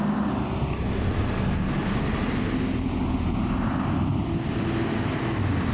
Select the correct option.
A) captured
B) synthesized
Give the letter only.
A